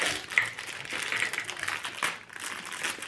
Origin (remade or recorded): recorded